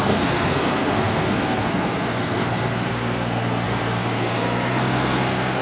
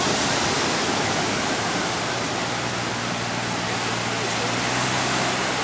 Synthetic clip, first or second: first